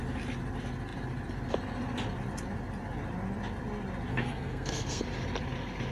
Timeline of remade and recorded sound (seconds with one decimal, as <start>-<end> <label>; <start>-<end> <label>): 0.0-4.1 recorded; 4.1-5.0 remade; 5.0-5.9 recorded

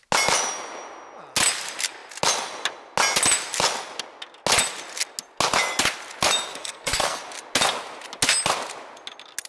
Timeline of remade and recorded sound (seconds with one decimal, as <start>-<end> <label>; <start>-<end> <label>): 0.0-6.5 recorded; 6.5-7.2 remade; 7.2-9.5 recorded

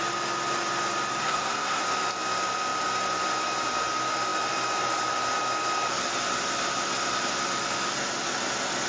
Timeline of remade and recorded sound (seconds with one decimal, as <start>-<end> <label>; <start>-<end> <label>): 0.0-1.2 recorded; 1.2-1.8 remade; 1.8-8.9 recorded

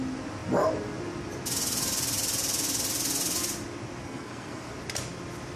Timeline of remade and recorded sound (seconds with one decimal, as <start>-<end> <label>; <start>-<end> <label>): 0.0-4.0 recorded; 4.0-4.7 remade; 4.7-5.6 recorded